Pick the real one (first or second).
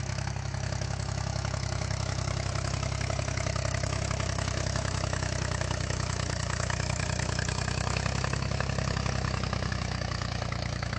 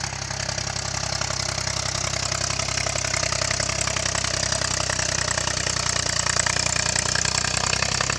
second